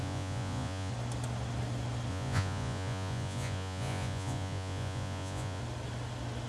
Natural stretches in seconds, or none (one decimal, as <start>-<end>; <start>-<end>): 0.9-2.1; 5.6-6.5